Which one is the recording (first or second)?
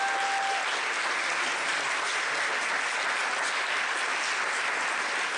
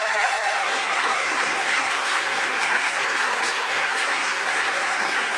first